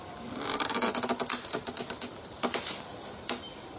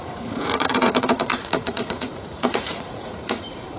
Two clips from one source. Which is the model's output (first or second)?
second